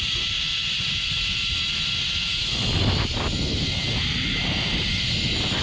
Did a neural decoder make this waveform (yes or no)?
no